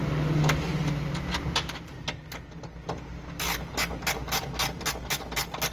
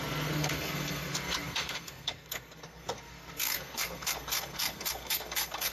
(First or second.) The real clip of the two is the first